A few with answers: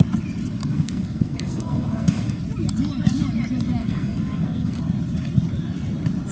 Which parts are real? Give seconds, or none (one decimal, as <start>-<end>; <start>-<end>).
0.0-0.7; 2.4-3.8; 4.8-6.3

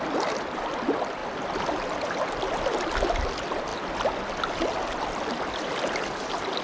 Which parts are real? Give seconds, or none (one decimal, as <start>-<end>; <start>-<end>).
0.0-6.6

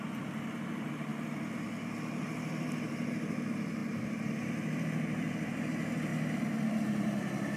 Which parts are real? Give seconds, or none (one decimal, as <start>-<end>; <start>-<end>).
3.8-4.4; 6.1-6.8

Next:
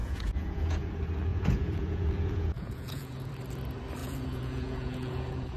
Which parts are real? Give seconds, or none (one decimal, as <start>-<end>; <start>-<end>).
0.9-1.3; 3.3-4.0

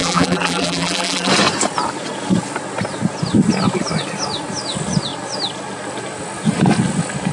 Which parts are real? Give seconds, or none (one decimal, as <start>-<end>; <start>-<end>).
1.3-7.3